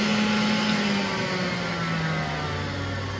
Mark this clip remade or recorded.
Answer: recorded